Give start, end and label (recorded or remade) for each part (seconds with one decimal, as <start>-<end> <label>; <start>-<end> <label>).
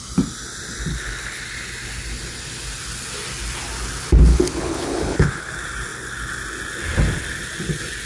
0.0-0.9 recorded; 0.9-1.4 remade; 1.4-4.3 recorded; 4.3-5.5 remade; 5.5-8.1 recorded